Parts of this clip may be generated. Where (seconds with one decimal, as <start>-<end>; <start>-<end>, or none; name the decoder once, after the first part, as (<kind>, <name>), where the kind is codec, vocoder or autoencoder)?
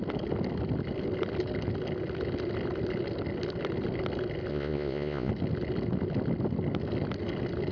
4.5-5.3 (vocoder, Vocos)